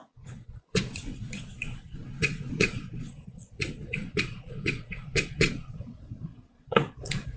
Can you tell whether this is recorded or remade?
remade